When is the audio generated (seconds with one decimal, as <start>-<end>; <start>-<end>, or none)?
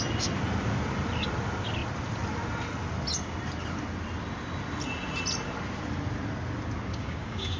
6.9-7.6